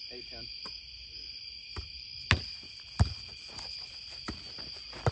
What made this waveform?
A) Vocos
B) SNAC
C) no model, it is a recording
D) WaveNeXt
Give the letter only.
C